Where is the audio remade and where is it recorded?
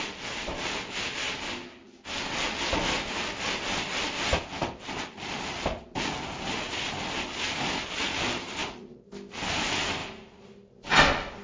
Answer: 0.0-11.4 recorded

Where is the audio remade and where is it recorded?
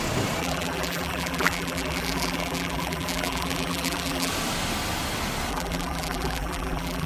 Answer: 0.0-0.4 recorded; 0.4-4.3 remade; 4.3-5.5 recorded; 5.5-7.1 remade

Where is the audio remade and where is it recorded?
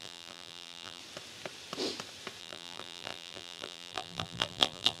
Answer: 0.0-1.0 remade; 1.0-2.4 recorded; 2.4-5.0 remade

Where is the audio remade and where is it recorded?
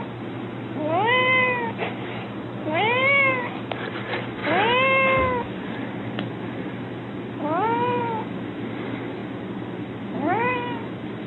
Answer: 0.0-11.3 recorded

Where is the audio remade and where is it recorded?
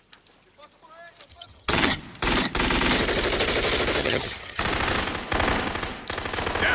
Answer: 0.0-1.3 recorded; 1.3-2.0 remade; 2.0-4.0 recorded; 4.0-4.6 remade; 4.6-6.7 recorded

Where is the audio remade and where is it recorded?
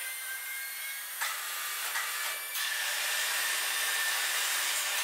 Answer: 0.0-2.1 remade; 2.1-2.5 recorded; 2.5-3.0 remade; 3.0-5.0 recorded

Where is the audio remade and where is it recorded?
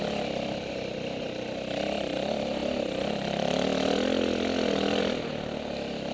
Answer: 0.0-6.1 recorded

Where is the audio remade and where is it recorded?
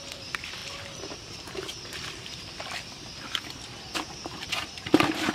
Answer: 0.0-0.6 recorded; 0.6-2.6 remade; 2.6-4.6 recorded; 4.6-5.3 remade